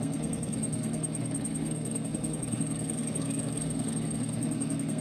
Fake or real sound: fake